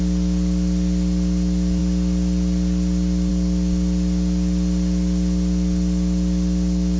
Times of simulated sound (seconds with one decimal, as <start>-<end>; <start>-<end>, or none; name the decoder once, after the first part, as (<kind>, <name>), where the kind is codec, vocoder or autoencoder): none